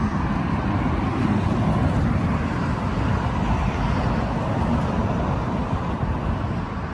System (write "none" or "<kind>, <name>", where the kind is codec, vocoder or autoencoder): none